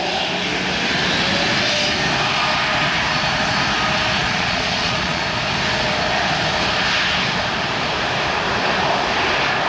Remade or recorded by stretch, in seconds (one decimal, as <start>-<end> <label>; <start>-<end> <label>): 0.0-4.2 recorded; 4.2-5.2 remade; 5.2-9.7 recorded